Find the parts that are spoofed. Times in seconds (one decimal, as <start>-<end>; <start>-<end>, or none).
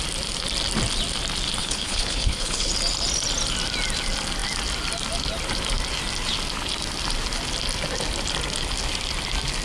1.6-2.7